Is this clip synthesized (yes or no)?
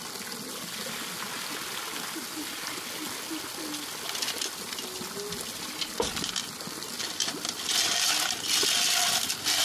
no